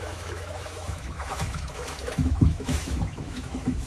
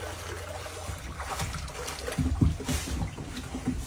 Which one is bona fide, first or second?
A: second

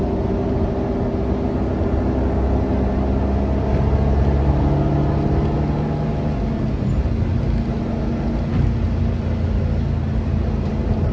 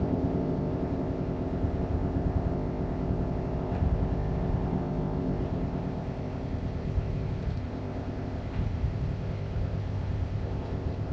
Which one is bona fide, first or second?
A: first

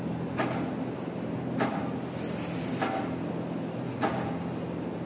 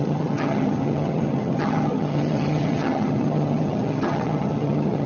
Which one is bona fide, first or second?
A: first